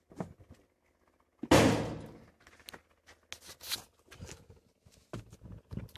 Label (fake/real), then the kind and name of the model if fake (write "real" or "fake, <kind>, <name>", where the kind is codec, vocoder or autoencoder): real